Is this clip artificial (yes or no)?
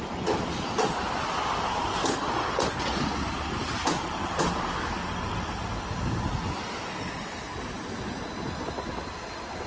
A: no